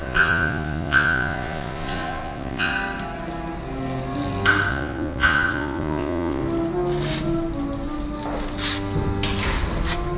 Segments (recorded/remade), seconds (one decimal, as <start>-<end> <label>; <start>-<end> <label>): 0.0-2.7 remade; 2.7-4.7 recorded; 4.7-6.4 remade; 6.4-10.2 recorded